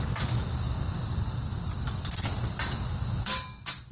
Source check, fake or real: real